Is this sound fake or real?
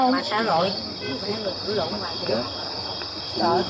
real